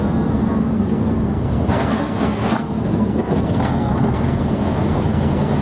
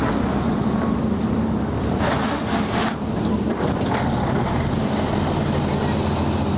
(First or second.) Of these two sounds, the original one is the second